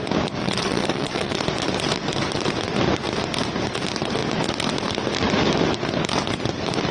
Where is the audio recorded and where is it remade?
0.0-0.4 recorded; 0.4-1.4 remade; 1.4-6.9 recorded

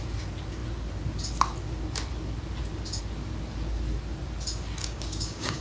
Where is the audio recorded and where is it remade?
0.0-4.8 recorded; 4.8-5.6 remade

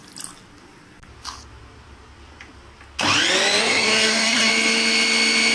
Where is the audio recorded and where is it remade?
0.0-3.6 recorded; 3.6-4.5 remade; 4.5-5.5 recorded

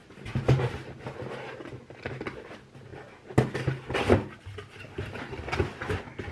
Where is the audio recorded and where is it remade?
0.0-6.3 recorded

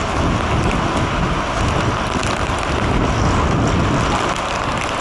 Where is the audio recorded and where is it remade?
0.0-5.0 recorded